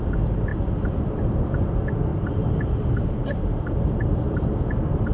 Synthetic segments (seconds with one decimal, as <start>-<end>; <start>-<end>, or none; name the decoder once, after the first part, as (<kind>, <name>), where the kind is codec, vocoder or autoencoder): 0.5-1.2 (vocoder, BigVGAN v2); 2.1-5.1